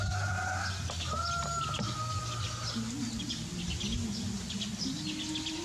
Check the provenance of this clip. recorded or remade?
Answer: recorded